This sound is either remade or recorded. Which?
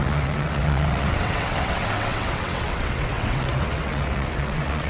remade